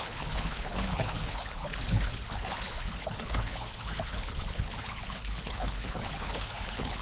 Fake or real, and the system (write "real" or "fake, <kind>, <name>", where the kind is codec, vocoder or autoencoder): fake, codec, HILCodec